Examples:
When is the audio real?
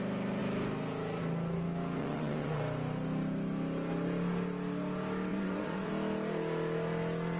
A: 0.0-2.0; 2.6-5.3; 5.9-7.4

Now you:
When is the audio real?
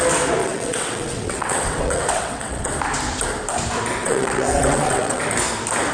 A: 0.0-0.4; 2.7-4.0; 5.2-5.9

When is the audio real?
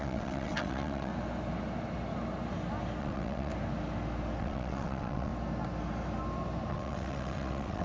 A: 1.1-3.0; 3.5-4.4; 5.3-6.7